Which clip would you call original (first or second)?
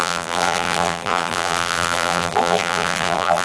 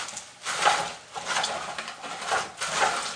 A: second